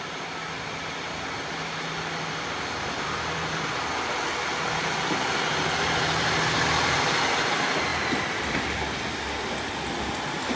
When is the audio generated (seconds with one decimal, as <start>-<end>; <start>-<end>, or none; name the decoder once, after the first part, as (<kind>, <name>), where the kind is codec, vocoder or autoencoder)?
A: none